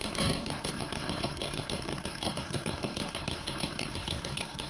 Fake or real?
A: fake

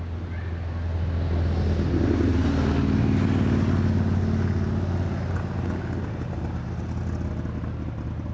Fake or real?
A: real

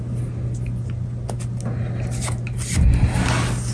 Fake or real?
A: real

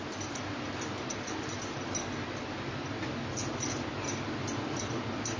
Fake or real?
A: real